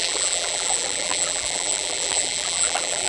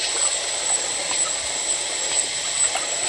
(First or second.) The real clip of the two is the second